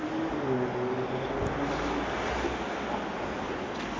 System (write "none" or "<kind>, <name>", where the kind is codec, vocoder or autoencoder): none